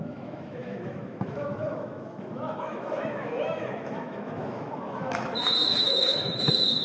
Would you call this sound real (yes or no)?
no